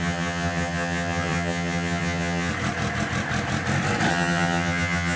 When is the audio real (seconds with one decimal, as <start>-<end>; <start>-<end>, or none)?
2.5-4.1